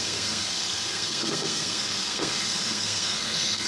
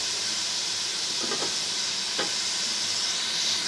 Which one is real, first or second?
second